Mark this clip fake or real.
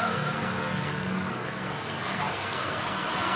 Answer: fake